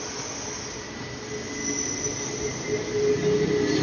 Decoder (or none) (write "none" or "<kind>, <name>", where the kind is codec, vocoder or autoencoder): none